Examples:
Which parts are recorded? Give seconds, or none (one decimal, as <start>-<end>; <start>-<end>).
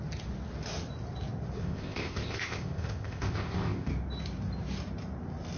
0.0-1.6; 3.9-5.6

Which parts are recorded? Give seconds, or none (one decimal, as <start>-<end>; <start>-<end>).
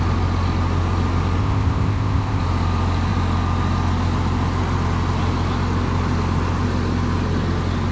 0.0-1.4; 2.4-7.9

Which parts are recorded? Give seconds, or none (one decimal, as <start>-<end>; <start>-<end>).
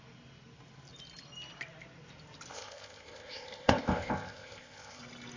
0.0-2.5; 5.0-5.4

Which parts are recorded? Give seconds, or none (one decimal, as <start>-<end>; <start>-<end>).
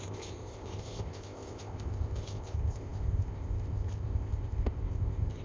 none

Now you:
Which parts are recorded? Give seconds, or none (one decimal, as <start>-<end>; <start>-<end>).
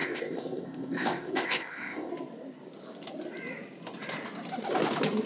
2.1-5.3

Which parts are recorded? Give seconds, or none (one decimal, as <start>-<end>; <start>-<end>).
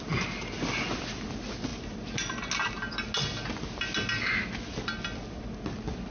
0.0-6.1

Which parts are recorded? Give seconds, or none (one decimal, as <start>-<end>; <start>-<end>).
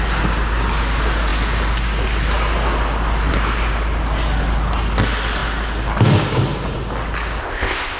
0.0-7.4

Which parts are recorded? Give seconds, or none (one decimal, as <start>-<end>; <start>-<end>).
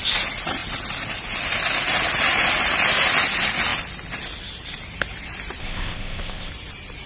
0.0-5.6; 6.5-7.1